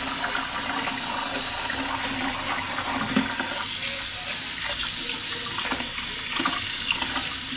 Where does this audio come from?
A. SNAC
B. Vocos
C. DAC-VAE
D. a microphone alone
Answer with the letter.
D